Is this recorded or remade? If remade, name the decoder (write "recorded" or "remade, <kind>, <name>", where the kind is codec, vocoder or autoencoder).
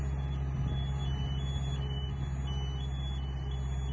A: recorded